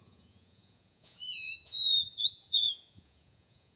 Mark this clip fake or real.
fake